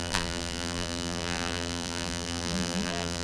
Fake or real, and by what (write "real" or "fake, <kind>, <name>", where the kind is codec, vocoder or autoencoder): fake, vocoder, BigVGAN v2